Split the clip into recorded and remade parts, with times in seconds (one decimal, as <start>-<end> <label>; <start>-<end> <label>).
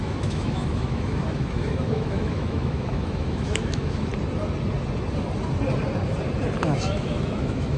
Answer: 0.0-4.1 remade; 4.1-6.6 recorded; 6.6-7.8 remade